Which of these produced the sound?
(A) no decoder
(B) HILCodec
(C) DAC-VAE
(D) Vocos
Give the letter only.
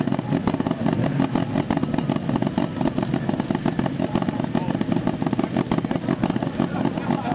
A